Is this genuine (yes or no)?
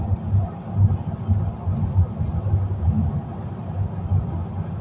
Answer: yes